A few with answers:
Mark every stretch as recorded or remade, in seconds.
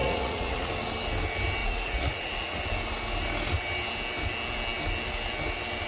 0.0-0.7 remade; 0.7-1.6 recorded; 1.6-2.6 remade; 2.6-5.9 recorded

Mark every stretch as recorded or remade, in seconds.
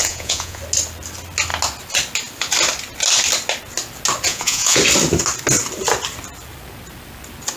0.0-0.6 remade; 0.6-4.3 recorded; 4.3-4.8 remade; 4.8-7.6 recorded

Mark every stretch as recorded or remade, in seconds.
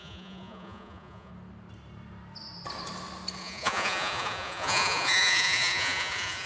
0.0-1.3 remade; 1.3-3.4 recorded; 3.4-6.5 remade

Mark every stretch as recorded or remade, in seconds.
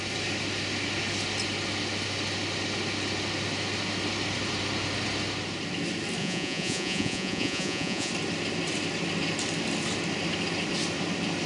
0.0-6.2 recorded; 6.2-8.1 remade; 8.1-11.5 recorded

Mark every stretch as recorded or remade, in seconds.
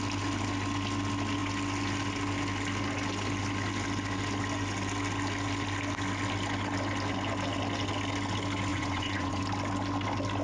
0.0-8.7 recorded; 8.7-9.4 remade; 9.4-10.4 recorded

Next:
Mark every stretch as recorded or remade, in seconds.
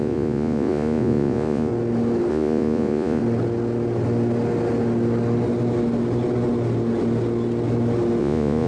0.0-1.7 remade; 1.7-2.3 recorded; 2.3-3.2 remade; 3.2-8.2 recorded; 8.2-8.7 remade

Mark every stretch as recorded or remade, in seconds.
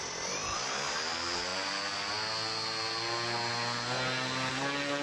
0.0-5.0 recorded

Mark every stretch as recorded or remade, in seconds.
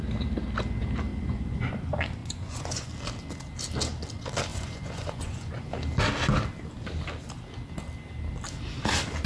0.0-1.1 recorded; 1.1-1.7 remade; 1.7-2.2 recorded; 2.2-2.9 remade; 2.9-4.5 recorded; 4.5-5.7 remade; 5.7-9.3 recorded